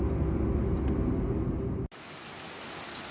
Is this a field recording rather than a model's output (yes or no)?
yes